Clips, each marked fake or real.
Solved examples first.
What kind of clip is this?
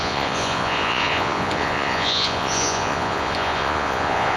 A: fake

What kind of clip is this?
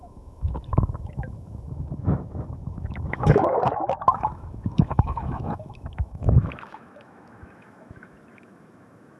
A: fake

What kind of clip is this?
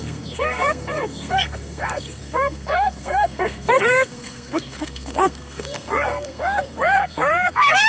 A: fake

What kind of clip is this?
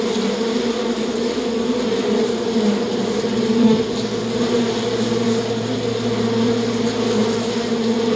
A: real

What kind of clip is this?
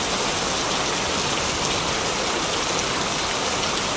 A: real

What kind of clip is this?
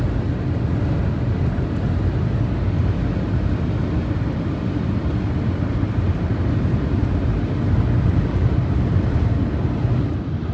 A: real